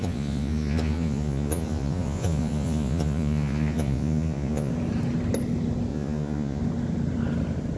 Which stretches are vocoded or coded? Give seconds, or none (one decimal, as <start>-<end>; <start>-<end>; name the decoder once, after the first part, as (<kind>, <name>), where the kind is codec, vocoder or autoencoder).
0.0-4.7 (vocoder, Vocos); 5.9-6.6

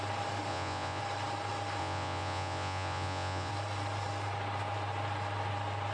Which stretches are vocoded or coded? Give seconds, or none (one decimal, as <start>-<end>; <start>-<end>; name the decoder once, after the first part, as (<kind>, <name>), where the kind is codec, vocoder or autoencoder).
0.5-1.0 (vocoder, Vocos); 1.8-3.5

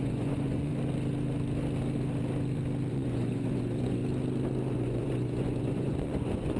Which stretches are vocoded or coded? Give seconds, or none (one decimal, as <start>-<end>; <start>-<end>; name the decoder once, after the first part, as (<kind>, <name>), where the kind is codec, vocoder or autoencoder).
0.0-0.7 (vocoder, Vocos); 2.9-4.0; 4.7-6.6

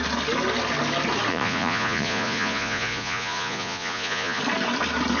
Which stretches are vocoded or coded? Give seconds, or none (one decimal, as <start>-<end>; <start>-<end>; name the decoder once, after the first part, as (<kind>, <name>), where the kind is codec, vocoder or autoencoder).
1.3-4.4 (vocoder, Vocos)

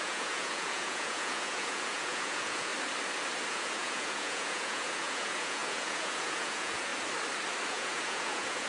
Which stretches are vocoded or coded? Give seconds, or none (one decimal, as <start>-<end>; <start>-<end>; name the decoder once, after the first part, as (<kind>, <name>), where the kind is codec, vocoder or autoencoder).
0.0-2.7 (vocoder, Vocos); 3.5-6.9; 7.7-8.7

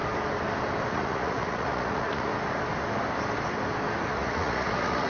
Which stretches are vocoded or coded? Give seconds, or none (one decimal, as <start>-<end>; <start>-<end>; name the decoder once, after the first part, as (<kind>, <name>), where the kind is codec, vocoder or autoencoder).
0.9-2.3 (vocoder, Vocos); 4.0-5.1

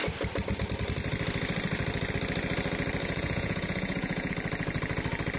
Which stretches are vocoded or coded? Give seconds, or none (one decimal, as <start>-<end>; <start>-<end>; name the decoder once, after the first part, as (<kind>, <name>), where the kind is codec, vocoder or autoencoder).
3.0-4.3 (vocoder, Vocos)

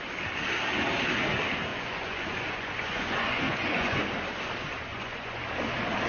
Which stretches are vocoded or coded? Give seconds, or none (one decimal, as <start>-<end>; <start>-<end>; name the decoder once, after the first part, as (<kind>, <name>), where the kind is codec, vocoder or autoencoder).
1.7-4.0 (vocoder, Vocos); 4.9-5.4